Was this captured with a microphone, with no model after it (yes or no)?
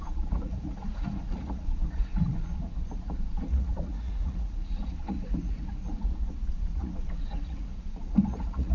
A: no